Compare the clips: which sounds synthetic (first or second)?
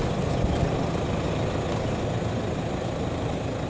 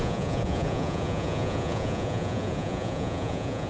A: second